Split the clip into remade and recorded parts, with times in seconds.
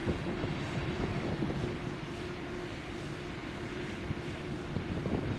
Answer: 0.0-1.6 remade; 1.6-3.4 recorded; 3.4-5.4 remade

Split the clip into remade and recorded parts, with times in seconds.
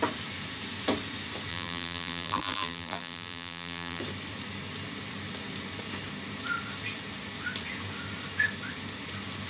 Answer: 0.0-1.5 recorded; 1.5-4.0 remade; 4.0-9.5 recorded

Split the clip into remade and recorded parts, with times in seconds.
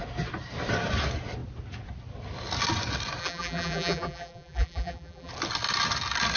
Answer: 0.0-3.2 recorded; 3.2-5.3 remade; 5.3-6.4 recorded